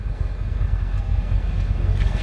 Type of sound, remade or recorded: remade